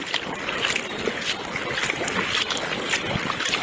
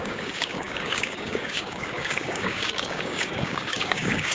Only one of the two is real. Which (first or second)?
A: first